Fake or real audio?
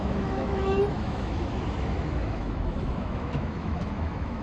fake